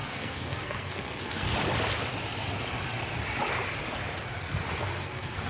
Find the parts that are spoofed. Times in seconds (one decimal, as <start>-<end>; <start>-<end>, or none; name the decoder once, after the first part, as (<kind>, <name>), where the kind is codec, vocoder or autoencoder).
0.0-1.5 (codec, SNAC); 4.8-5.5